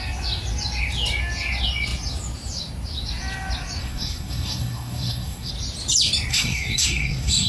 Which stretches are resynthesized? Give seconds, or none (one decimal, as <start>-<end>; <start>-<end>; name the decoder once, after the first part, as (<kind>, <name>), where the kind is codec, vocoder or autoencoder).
3.8-5.5 (codec, SNAC); 6.3-7.5